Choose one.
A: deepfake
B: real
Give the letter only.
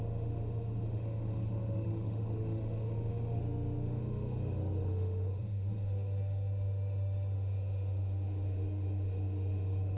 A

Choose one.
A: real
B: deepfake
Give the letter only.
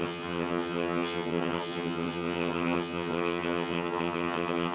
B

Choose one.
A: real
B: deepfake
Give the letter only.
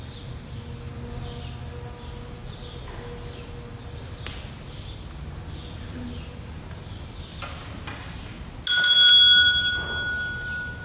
A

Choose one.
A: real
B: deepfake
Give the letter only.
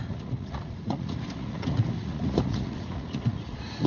B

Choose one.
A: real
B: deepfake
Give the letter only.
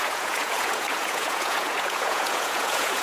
B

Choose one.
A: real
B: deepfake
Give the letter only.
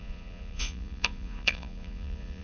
B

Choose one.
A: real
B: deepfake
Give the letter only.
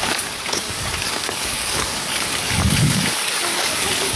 B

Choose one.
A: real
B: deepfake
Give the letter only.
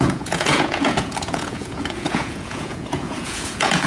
B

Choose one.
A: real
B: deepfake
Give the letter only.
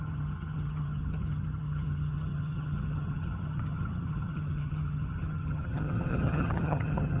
B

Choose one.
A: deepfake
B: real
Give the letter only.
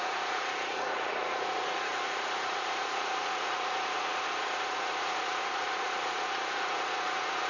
A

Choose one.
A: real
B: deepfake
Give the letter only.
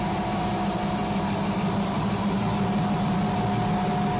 A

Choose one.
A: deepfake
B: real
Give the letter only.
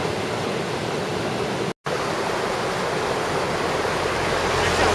B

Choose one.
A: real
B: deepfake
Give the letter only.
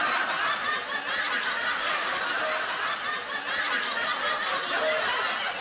A